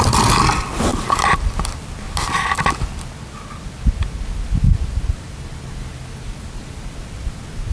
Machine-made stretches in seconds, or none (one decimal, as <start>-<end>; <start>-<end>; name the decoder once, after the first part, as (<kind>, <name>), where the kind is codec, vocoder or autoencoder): none